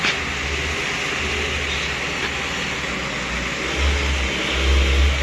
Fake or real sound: real